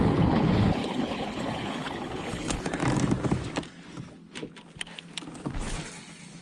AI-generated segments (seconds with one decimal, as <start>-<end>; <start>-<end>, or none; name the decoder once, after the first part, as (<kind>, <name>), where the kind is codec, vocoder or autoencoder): 0.0-2.8 (codec, HILCodec)